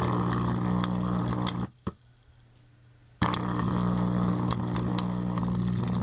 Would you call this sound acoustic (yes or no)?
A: yes